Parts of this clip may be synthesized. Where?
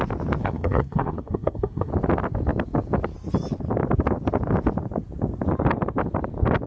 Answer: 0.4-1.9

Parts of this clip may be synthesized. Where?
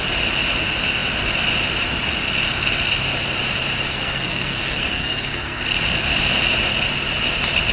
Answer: 3.9-5.6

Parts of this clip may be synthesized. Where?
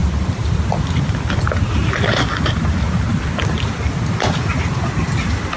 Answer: none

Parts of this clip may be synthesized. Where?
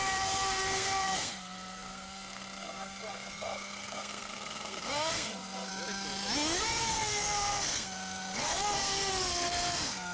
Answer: 0.0-5.7; 6.6-10.1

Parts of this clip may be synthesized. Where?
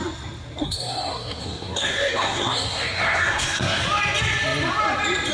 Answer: 0.6-3.8